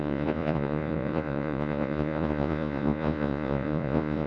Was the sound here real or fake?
fake